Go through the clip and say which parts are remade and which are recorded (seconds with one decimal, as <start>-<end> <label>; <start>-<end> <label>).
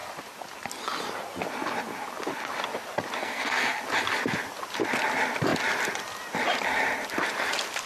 0.0-3.2 recorded; 3.2-3.8 remade; 3.8-7.9 recorded